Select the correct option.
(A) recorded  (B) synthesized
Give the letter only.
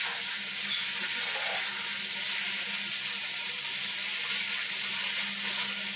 A